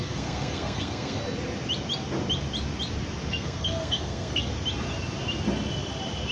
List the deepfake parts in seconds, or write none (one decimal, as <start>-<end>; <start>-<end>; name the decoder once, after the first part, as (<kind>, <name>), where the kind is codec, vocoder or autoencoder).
0.0-1.2 (codec, SNAC); 3.3-4.5